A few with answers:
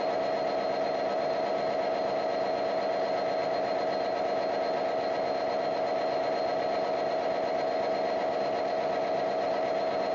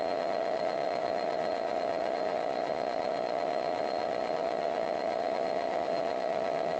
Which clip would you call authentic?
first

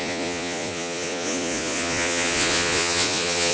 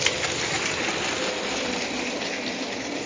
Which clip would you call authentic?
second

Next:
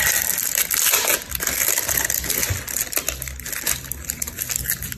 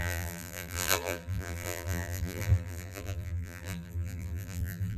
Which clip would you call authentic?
first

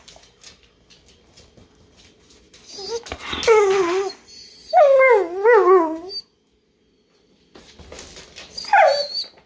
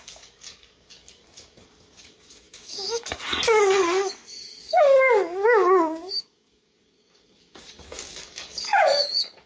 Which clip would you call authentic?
first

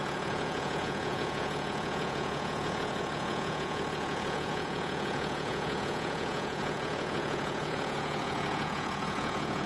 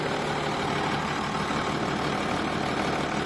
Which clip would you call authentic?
second